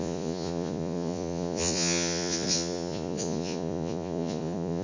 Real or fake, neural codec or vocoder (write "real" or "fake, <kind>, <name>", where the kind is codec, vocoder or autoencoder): fake, vocoder, Vocos